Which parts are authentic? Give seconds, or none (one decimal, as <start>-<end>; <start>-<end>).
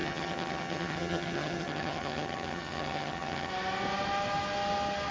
3.5-5.1